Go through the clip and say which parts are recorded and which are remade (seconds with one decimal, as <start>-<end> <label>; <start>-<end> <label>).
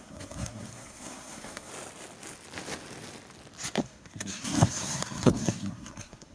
0.0-1.7 remade; 1.7-3.8 recorded; 3.8-6.3 remade